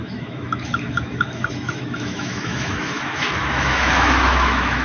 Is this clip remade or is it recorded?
remade